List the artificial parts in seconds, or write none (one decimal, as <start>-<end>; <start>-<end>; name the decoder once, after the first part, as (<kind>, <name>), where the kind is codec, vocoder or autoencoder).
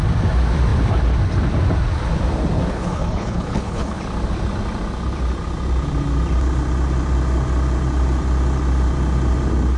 2.7-4.0 (codec, HILCodec)